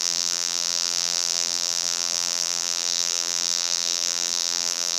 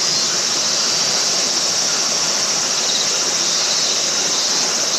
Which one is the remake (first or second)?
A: first